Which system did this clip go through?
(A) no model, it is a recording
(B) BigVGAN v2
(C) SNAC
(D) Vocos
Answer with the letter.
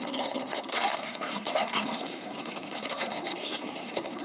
C